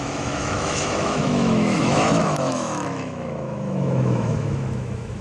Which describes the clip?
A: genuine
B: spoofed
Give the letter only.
B